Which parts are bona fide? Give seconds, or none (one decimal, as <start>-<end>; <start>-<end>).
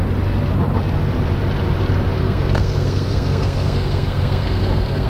0.0-2.2